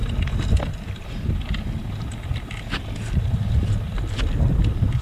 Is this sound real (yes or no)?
yes